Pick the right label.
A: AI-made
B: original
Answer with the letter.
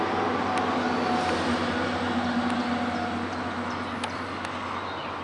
B